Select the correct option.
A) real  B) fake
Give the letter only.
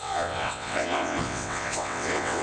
B